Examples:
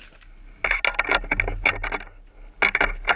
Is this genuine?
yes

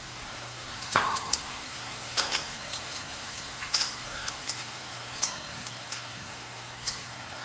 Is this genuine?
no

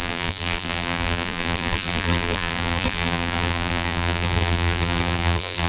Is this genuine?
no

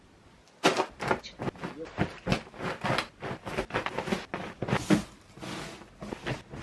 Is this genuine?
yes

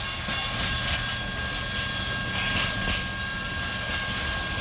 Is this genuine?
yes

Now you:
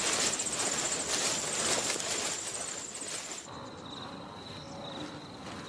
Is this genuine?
yes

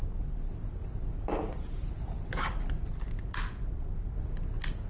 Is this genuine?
yes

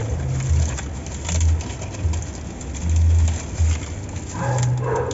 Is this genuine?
yes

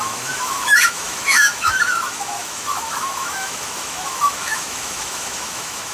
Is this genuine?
no